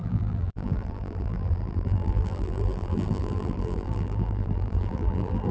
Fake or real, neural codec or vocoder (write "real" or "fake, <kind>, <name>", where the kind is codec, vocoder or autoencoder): fake, vocoder, BigVGAN v2